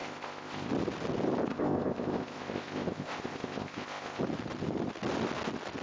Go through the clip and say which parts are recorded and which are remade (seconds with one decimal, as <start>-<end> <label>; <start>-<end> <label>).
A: 0.0-0.7 remade; 0.7-1.5 recorded; 1.5-4.2 remade; 4.2-5.8 recorded